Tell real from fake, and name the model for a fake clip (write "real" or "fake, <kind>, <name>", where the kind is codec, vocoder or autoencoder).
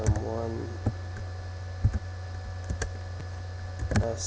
real